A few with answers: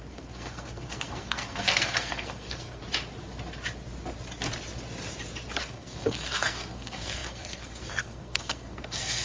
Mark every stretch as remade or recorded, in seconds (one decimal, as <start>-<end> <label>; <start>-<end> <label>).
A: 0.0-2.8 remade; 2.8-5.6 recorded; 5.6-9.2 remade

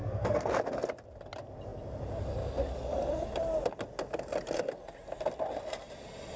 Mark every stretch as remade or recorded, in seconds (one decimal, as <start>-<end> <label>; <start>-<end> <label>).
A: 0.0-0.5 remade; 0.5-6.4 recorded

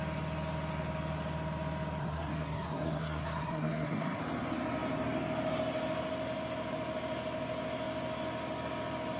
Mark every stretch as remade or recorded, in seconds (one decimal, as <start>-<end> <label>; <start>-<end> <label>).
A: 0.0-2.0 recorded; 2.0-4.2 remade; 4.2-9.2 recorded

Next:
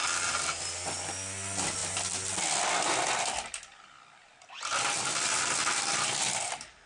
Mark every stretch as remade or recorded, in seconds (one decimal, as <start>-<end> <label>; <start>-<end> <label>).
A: 0.0-6.9 recorded